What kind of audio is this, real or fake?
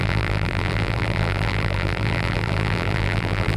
fake